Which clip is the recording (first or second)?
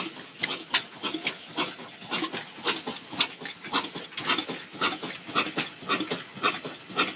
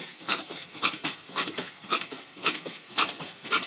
first